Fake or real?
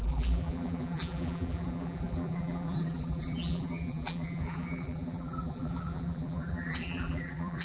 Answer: fake